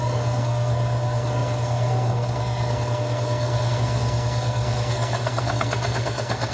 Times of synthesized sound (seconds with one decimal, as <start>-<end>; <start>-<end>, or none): 0.0-6.5